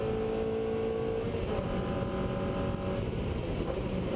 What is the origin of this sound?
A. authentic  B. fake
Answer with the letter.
A